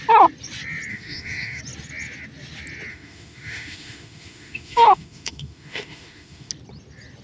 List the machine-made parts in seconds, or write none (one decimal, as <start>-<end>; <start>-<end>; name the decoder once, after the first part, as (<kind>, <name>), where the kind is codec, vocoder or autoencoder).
0.9-1.6 (autoencoder, DAC-VAE); 2.9-6.5